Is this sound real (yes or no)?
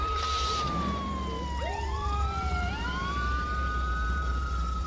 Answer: no